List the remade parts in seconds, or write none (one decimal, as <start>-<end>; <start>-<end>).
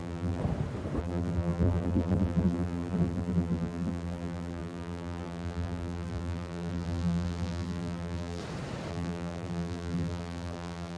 0.0-0.4; 1.0-8.4; 8.9-11.0